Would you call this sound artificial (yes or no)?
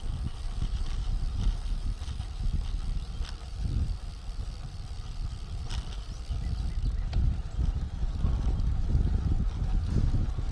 no